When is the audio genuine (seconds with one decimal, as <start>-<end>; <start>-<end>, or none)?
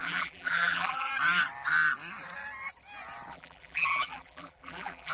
1.1-3.3